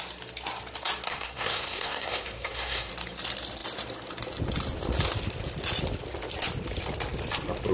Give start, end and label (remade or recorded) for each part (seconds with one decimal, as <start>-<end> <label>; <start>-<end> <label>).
0.0-1.1 recorded; 1.1-2.9 remade; 2.9-7.7 recorded